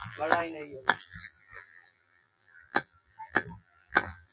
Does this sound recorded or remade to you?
remade